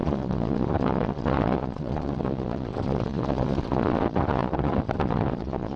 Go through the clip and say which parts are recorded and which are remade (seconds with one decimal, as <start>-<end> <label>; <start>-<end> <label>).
0.0-5.8 remade